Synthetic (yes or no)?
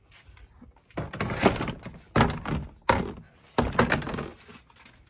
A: no